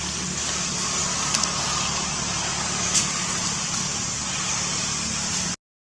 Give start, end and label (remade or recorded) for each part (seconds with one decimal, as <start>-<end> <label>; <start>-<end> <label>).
0.0-5.8 recorded